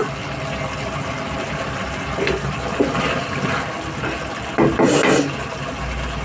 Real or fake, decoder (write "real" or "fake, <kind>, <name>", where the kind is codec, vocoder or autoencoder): real